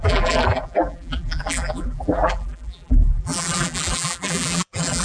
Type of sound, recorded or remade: remade